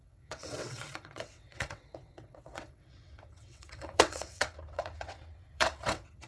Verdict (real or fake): fake